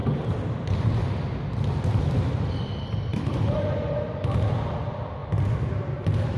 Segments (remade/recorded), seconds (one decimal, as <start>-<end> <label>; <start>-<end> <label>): 0.0-3.1 recorded; 3.1-4.8 remade; 4.8-6.4 recorded